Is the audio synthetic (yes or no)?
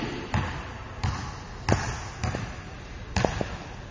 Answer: no